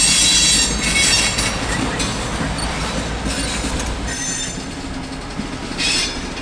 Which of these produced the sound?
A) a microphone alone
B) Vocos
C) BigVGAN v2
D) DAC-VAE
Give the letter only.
A